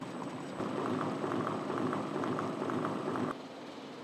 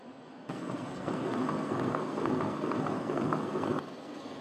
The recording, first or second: first